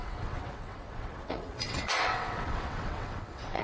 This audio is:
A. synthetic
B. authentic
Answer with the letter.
A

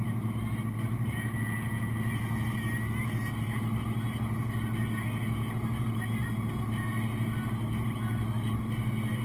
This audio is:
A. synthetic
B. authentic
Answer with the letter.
B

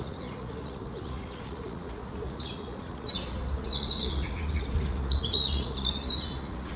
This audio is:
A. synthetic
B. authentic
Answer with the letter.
A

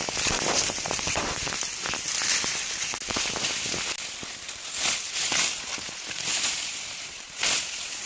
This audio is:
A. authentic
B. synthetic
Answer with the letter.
A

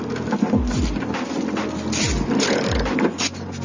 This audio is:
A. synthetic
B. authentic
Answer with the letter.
B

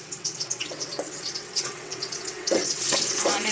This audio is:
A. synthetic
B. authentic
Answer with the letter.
A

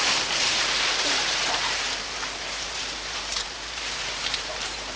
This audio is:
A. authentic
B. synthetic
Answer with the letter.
B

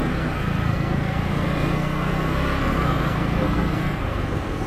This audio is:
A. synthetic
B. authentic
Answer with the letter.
A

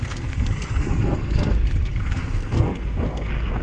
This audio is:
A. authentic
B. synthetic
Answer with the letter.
B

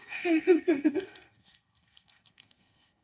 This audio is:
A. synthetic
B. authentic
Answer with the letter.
A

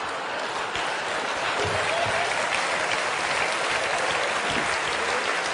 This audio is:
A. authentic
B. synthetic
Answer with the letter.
A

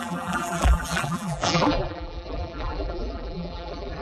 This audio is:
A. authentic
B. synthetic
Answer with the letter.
B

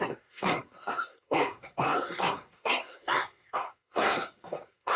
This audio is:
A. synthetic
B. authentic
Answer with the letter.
A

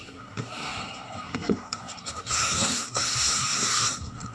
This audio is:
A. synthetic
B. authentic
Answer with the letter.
A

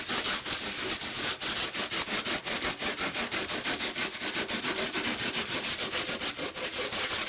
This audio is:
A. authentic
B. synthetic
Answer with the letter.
A